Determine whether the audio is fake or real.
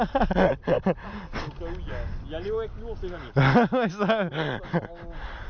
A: real